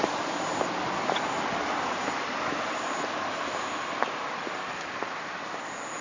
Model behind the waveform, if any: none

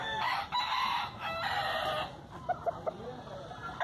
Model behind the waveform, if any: none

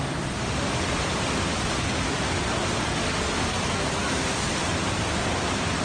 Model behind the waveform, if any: none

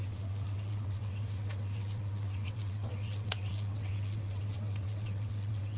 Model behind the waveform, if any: vocoder, WaveNeXt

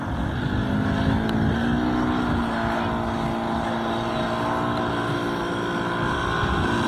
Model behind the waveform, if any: none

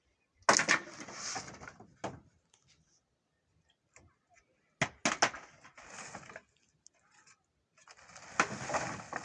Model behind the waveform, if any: none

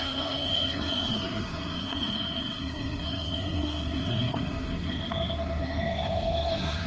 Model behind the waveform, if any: codec, SNAC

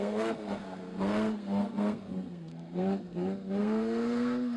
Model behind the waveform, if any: codec, SNAC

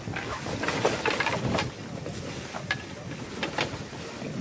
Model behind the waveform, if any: none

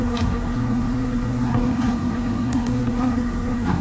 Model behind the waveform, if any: codec, SNAC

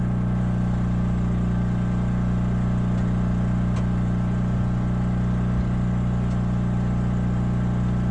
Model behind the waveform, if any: none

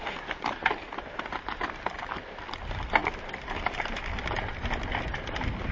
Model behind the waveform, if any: none